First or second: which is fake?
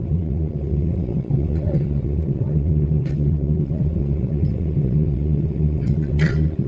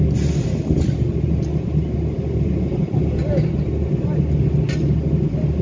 first